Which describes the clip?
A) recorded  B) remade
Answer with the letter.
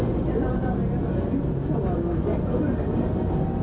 A